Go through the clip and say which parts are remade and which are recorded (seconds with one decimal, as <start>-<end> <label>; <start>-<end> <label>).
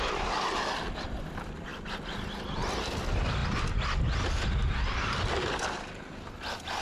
0.0-6.8 recorded